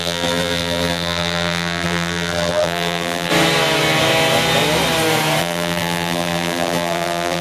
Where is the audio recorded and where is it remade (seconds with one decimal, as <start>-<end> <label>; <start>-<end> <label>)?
0.0-3.3 remade; 3.3-5.4 recorded; 5.4-7.4 remade

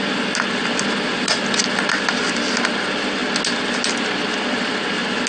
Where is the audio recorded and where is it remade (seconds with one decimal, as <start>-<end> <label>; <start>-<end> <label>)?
0.0-5.3 recorded

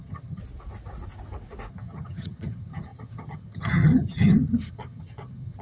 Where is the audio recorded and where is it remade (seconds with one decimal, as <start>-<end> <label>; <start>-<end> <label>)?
0.0-0.4 remade; 0.4-1.7 recorded; 1.7-5.6 remade

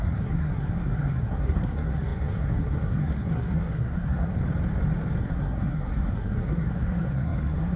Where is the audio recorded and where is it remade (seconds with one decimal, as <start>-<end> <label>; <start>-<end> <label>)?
0.0-4.4 remade; 4.4-5.2 recorded; 5.2-7.8 remade

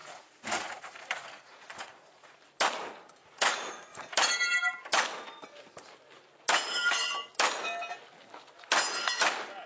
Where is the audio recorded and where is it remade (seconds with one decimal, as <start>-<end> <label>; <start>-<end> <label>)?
0.0-2.4 remade; 2.4-3.2 recorded; 3.2-4.0 remade; 4.0-9.7 recorded

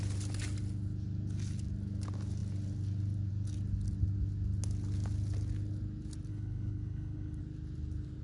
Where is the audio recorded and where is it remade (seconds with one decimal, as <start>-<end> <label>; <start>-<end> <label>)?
0.0-6.3 recorded; 6.3-7.4 remade; 7.4-8.2 recorded